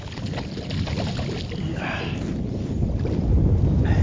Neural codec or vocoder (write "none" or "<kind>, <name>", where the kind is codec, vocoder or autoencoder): none